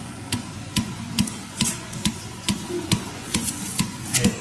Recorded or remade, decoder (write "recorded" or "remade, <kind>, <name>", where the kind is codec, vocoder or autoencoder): remade, vocoder, Vocos